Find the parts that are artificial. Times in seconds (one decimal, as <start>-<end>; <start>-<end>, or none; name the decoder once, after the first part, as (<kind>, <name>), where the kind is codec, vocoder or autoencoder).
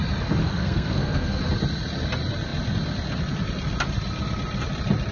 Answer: 0.4-1.4 (codec, SNAC)